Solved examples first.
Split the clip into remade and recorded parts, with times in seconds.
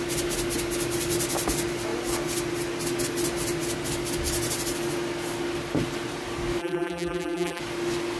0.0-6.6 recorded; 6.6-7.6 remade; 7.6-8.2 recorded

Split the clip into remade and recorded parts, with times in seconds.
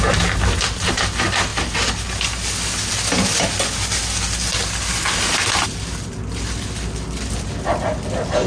0.0-8.5 recorded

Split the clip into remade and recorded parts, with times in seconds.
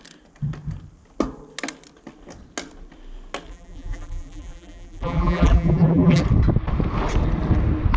0.0-3.5 recorded; 3.5-6.2 remade; 6.2-8.0 recorded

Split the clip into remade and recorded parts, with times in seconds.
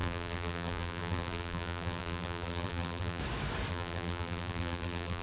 0.0-3.2 remade; 3.2-3.7 recorded; 3.7-5.2 remade